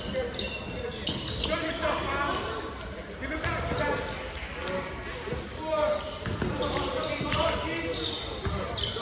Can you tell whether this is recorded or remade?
recorded